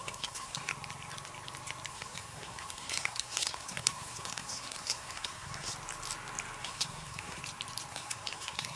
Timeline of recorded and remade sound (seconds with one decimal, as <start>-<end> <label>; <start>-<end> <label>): 0.0-0.7 remade; 0.7-1.9 recorded; 1.9-5.7 remade; 5.7-6.6 recorded; 6.6-7.4 remade; 7.4-7.9 recorded; 7.9-8.8 remade